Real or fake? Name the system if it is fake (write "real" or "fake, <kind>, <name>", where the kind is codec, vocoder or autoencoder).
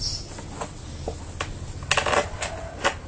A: real